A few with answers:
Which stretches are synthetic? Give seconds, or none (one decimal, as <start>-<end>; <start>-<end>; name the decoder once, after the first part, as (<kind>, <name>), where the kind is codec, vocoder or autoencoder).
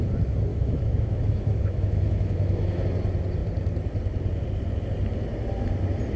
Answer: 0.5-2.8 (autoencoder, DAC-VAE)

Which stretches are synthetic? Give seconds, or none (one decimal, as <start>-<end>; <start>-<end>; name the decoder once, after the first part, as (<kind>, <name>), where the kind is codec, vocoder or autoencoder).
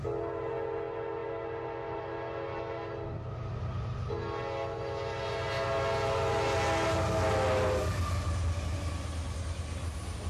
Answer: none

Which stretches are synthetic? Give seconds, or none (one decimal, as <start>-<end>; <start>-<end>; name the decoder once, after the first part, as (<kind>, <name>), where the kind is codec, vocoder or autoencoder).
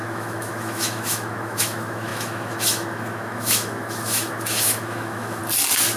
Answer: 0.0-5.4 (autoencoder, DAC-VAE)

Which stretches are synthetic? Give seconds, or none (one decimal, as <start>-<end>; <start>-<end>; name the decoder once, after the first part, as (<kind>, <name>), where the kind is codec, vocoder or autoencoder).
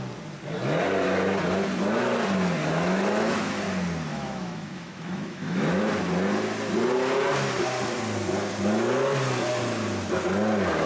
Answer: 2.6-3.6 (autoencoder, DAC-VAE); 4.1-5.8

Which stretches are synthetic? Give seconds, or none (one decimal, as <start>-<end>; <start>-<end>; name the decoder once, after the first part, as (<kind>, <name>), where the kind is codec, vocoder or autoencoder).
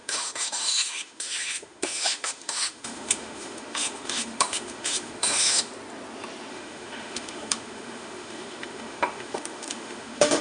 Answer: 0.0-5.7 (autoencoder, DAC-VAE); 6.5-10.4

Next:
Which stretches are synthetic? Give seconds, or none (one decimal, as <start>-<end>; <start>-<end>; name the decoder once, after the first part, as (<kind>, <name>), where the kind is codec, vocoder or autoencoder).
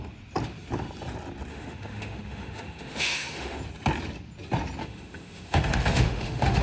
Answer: 1.5-3.6 (autoencoder, DAC-VAE); 4.8-6.6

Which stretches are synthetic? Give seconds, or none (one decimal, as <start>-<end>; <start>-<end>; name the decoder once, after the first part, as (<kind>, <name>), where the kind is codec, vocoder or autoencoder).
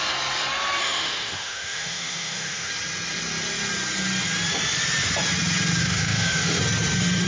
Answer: 0.8-2.7 (autoencoder, DAC-VAE); 5.8-6.6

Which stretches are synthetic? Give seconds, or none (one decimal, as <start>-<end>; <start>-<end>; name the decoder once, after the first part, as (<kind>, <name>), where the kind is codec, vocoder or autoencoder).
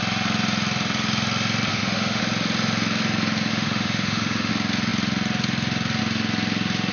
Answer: 1.7-2.2 (autoencoder, DAC-VAE); 3.5-4.5